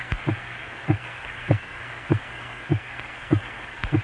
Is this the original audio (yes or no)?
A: no